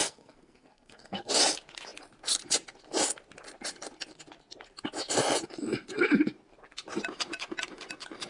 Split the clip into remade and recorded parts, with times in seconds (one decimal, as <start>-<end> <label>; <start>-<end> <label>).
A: 0.0-1.3 remade; 1.3-8.3 recorded